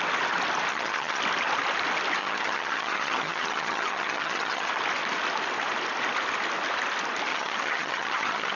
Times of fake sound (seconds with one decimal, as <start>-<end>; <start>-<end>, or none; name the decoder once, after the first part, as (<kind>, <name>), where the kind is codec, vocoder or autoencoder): 0.7-1.2 (vocoder, HiFi-GAN); 2.2-4.7; 7.3-8.6